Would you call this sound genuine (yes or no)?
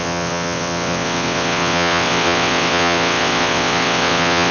no